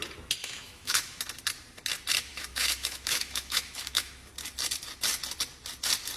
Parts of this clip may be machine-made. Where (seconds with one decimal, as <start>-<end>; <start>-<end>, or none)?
0.4-1.2; 2.3-4.3